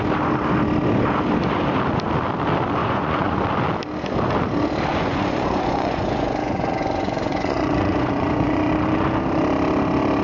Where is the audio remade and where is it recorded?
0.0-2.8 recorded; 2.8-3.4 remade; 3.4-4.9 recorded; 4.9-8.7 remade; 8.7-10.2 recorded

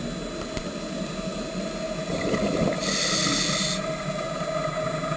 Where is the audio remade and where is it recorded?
0.0-5.2 recorded

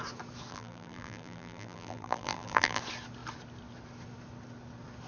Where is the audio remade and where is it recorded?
0.0-0.5 recorded; 0.5-2.8 remade; 2.8-5.1 recorded

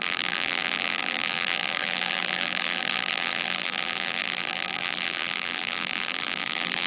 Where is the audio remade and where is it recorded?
0.0-6.9 remade

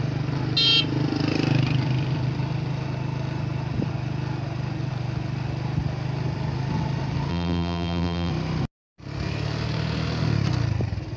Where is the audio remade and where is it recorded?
0.0-7.3 recorded; 7.3-8.3 remade; 8.3-11.2 recorded

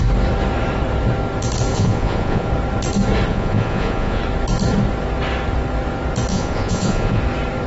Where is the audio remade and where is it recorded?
0.0-1.7 recorded; 1.7-2.5 remade; 2.5-3.3 recorded; 3.3-4.2 remade; 4.2-6.3 recorded; 6.3-7.2 remade; 7.2-7.7 recorded

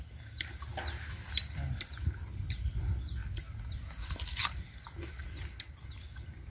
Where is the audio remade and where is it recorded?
0.0-6.5 recorded